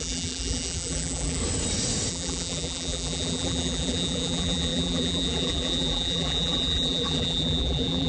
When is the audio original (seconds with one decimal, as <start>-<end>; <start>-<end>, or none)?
1.4-2.1